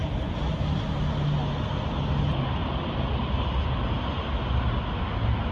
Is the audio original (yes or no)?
yes